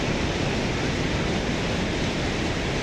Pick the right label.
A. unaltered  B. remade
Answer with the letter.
A